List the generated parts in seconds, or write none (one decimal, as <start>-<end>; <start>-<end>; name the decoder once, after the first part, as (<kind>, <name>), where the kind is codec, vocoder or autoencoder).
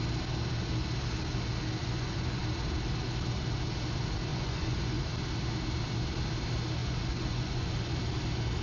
1.8-2.4 (vocoder, Vocos); 4.3-5.0; 6.8-7.7